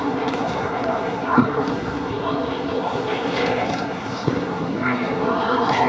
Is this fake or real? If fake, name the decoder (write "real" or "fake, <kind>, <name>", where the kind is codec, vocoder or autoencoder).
fake, codec, SNAC